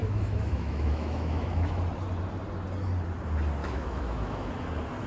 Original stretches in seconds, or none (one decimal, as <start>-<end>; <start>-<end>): 1.8-3.6; 4.5-5.1